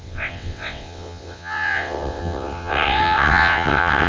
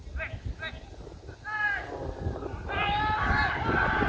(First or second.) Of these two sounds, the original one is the second